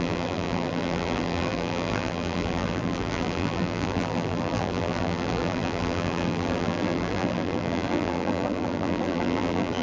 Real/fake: fake